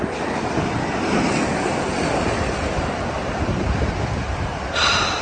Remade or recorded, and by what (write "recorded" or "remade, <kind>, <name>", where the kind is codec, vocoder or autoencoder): recorded